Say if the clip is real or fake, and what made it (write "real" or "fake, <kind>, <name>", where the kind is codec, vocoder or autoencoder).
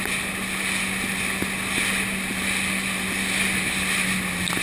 real